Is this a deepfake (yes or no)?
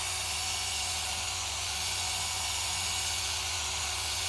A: yes